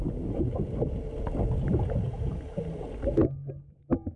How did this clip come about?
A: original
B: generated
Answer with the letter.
A